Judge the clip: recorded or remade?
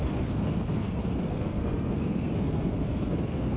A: remade